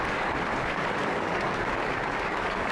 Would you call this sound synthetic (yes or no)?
yes